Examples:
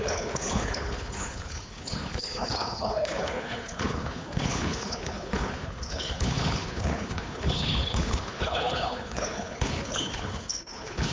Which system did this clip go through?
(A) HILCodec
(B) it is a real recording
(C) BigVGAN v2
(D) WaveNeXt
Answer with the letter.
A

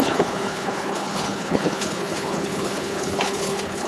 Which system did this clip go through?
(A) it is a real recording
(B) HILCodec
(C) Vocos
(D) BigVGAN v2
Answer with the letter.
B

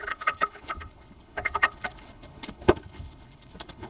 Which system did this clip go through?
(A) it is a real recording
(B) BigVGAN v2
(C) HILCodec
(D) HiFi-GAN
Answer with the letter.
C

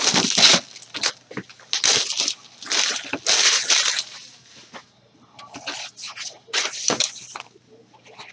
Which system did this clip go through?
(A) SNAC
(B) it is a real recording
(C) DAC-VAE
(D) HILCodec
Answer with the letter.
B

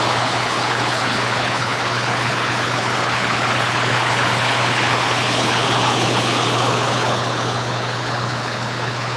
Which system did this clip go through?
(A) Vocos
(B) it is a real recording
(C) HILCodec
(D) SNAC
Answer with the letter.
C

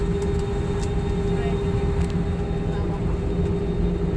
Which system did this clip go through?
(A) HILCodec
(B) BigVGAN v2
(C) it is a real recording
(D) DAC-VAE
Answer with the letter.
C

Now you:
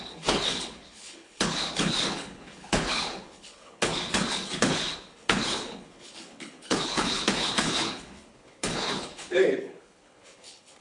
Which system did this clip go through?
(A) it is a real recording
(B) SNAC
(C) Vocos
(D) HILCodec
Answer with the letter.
D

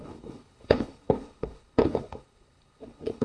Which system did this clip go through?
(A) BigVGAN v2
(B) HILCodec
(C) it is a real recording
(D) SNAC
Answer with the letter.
B